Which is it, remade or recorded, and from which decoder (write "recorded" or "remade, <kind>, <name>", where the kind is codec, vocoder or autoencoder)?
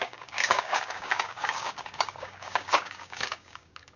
remade, codec, DAC